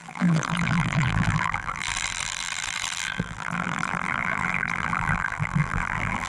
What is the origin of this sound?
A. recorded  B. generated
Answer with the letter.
B